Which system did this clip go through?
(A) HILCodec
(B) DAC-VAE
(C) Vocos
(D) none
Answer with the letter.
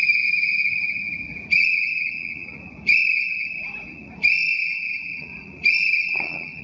C